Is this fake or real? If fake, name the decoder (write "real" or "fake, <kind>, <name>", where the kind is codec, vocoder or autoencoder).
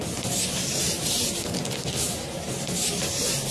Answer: real